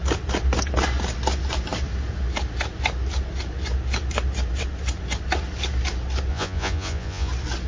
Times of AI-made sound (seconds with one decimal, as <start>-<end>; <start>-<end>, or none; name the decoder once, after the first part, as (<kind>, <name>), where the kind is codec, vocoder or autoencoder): 6.3-7.3 (vocoder, Vocos)